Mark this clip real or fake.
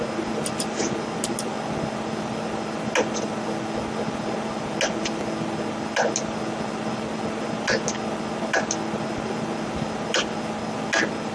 real